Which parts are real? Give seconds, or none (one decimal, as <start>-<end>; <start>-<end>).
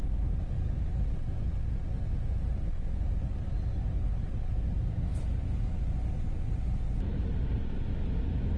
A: 0.0-8.6